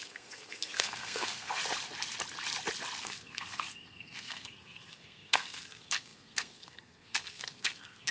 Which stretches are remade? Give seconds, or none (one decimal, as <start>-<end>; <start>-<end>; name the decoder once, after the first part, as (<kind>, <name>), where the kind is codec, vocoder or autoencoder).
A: 0.0-1.6 (codec, SNAC); 3.0-8.1